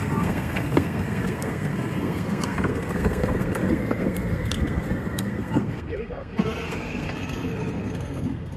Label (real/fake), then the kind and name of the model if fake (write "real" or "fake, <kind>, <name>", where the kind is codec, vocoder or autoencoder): fake, codec, SNAC